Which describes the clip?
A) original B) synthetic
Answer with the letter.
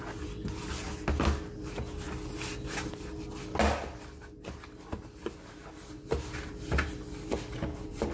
A